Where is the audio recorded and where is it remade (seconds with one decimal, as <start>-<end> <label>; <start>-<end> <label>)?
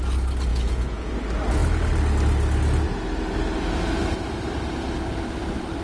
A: 0.0-0.5 recorded; 0.5-1.1 remade; 1.1-5.8 recorded